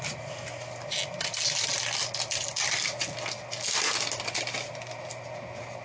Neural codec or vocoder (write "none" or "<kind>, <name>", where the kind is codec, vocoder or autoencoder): none